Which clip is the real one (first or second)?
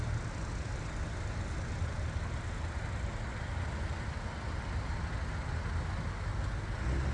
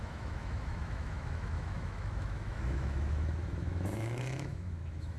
first